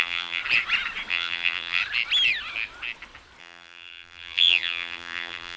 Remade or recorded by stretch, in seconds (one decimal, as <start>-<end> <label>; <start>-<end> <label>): 0.0-0.4 remade; 0.4-1.1 recorded; 1.1-1.8 remade; 1.8-3.4 recorded; 3.4-5.6 remade